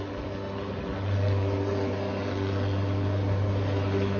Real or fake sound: real